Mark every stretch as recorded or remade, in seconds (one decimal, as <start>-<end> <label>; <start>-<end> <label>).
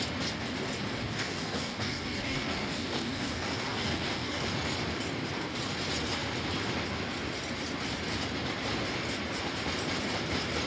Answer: 0.0-1.0 recorded; 1.0-4.5 remade; 4.5-10.7 recorded